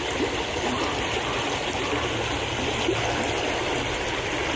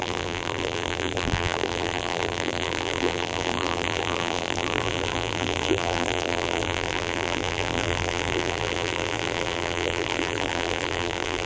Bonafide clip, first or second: first